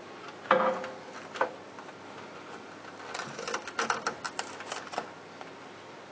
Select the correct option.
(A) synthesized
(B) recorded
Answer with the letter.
B